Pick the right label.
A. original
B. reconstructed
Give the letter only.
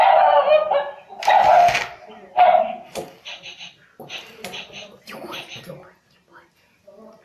A